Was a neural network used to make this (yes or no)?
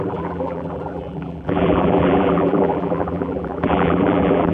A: yes